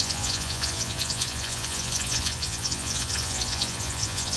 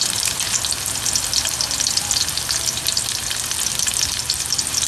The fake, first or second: first